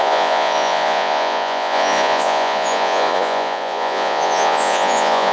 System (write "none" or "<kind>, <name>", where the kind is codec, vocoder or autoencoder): vocoder, Vocos